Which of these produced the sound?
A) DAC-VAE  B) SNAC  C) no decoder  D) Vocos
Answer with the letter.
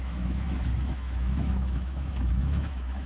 A